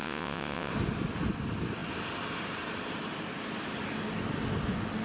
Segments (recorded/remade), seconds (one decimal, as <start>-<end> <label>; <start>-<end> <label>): 0.0-0.7 remade; 0.7-5.0 recorded